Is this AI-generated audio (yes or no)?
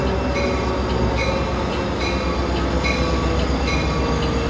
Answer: no